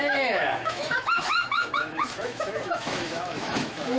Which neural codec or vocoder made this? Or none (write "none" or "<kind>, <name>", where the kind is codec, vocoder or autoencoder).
autoencoder, DAC-VAE